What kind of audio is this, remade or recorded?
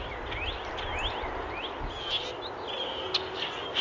recorded